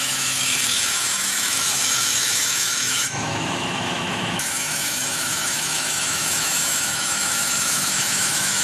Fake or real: fake